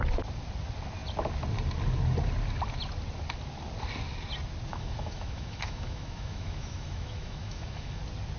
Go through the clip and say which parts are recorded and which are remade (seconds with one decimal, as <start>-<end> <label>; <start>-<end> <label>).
0.0-4.7 recorded; 4.7-8.0 remade; 8.0-8.4 recorded